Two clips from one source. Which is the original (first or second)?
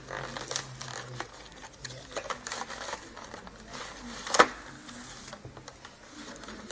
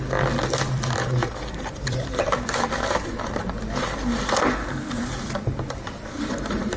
first